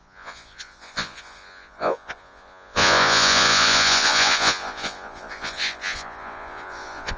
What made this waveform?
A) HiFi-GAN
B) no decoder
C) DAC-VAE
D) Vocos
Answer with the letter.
D